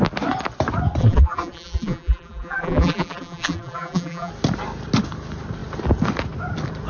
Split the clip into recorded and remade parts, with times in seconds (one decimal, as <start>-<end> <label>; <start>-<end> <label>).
0.0-1.0 recorded; 1.0-4.3 remade; 4.3-6.9 recorded